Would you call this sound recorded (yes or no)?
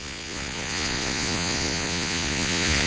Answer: no